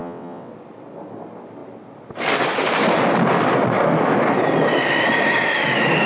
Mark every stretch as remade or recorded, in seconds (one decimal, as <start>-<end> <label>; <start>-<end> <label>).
0.0-0.5 remade; 0.5-6.1 recorded

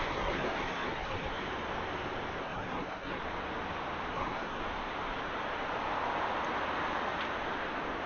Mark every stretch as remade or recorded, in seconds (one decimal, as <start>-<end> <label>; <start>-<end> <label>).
0.0-1.4 remade; 1.4-2.4 recorded; 2.4-3.2 remade; 3.2-4.1 recorded; 4.1-4.6 remade; 4.6-8.1 recorded